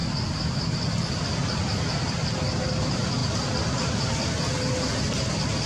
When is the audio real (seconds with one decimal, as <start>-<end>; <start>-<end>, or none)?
0.0-5.7